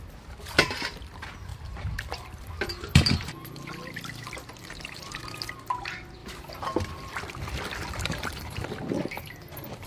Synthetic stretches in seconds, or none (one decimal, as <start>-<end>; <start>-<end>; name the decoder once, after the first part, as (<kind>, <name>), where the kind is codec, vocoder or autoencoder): 1.5-5.2 (vocoder, BigVGAN v2); 6.2-7.2; 7.8-8.4